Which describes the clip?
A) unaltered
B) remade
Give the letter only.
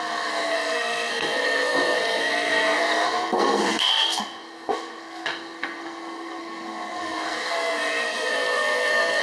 B